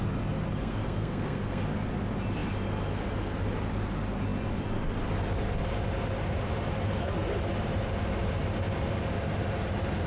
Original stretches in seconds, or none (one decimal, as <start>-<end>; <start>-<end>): 0.0-0.6; 1.6-10.1